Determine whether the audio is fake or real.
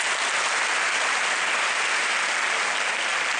real